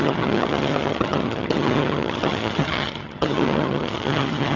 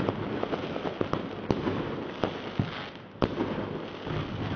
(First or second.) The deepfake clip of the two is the first